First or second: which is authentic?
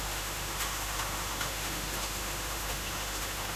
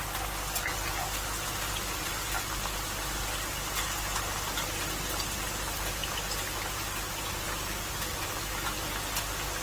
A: second